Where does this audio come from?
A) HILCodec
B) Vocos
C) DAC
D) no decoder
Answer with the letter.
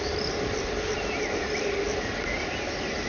D